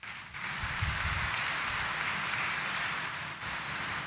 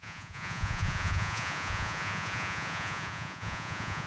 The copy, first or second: second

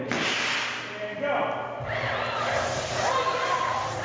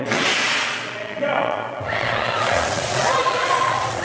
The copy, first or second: second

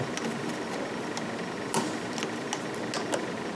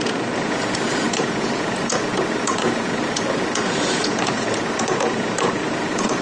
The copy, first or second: second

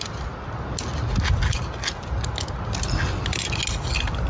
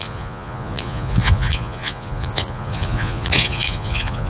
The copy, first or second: second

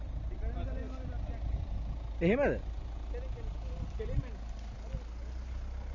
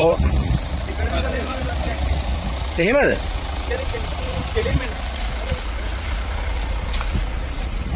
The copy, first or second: second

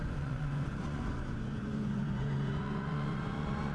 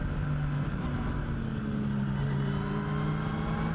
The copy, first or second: first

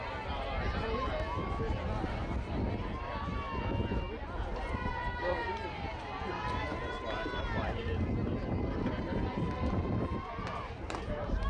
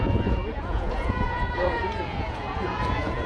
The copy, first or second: second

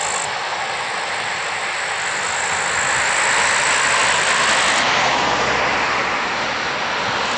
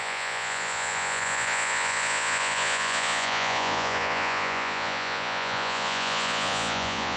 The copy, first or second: second